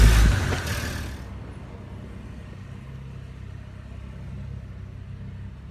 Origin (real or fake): real